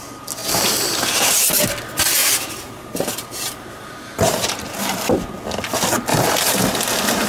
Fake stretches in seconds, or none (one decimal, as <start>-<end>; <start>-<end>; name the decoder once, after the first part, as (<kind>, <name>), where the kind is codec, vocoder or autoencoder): 2.2-5.2 (vocoder, BigVGAN v2); 6.1-6.6